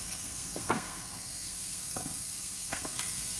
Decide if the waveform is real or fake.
fake